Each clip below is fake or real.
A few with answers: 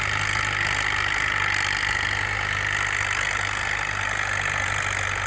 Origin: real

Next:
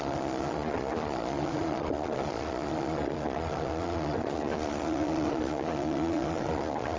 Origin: fake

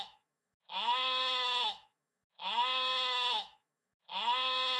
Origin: fake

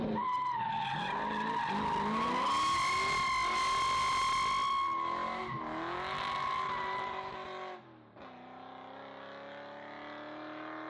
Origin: real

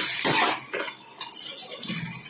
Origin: real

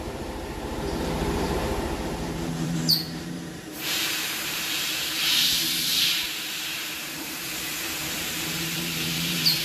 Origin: fake